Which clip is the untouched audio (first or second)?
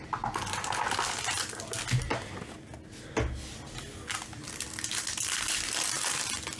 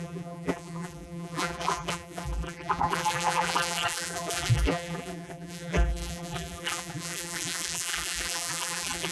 first